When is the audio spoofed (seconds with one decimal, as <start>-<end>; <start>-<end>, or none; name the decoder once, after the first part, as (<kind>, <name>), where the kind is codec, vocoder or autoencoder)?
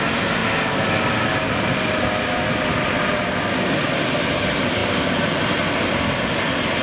none